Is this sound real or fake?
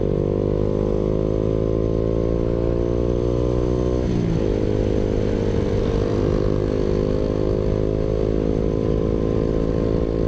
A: real